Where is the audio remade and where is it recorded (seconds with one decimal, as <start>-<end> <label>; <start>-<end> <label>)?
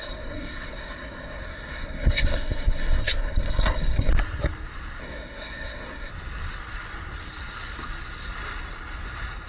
0.0-4.1 remade; 4.1-5.0 recorded; 5.0-6.1 remade; 6.1-9.5 recorded